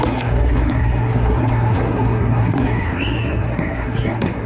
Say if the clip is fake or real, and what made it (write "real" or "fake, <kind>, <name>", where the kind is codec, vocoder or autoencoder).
fake, codec, SNAC